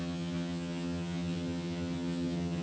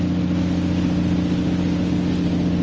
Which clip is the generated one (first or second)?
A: first